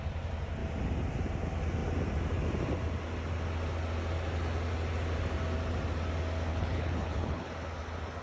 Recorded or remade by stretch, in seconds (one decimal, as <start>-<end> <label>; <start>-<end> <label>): 0.0-6.5 recorded; 6.5-7.5 remade; 7.5-8.2 recorded